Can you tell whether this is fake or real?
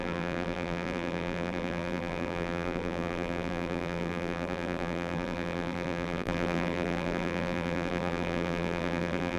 fake